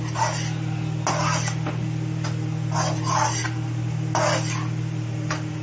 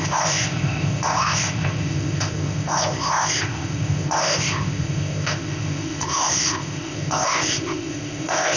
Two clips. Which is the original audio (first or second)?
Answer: first